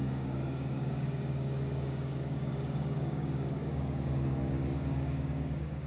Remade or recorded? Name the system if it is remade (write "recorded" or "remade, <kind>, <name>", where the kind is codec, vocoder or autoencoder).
remade, codec, DAC